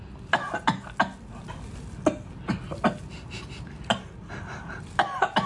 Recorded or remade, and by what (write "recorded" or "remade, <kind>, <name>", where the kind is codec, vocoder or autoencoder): recorded